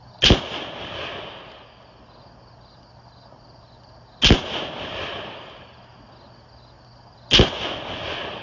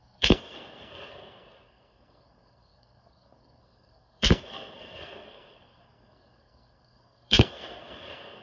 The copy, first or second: second